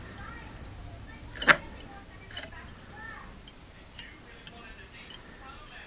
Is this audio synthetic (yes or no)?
no